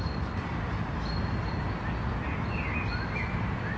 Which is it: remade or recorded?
recorded